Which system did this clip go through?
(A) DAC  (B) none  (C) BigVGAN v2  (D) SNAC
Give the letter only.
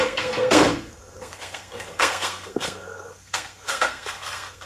D